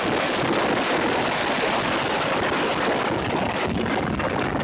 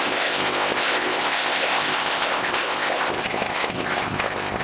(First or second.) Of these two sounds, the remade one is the second